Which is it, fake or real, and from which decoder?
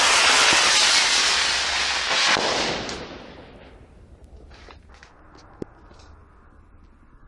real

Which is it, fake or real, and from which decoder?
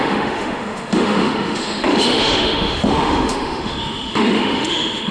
fake, autoencoder, DAC-VAE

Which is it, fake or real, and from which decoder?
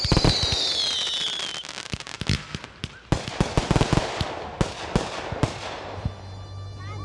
real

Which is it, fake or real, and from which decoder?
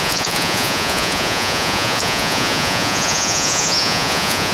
fake, vocoder, Vocos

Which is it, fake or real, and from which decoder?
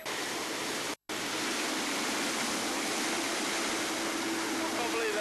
real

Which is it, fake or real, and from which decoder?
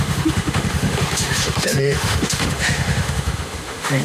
fake, autoencoder, DAC-VAE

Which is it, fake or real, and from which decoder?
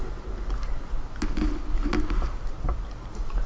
real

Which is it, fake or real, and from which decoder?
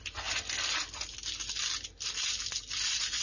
real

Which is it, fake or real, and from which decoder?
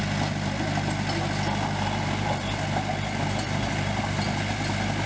real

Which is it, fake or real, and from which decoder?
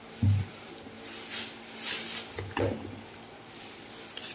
real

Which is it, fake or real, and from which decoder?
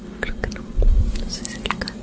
real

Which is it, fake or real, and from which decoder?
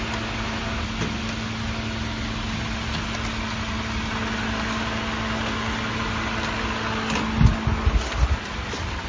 real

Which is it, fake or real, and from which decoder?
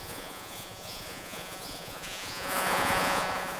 fake, vocoder, Vocos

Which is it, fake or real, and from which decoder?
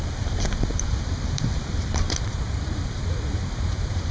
fake, vocoder, BigVGAN v2